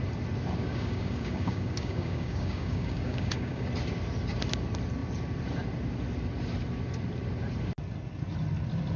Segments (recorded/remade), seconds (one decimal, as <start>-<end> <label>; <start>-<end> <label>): 0.0-0.6 recorded; 0.6-3.7 remade; 3.7-9.0 recorded